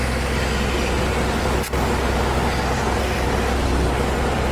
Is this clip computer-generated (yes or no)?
no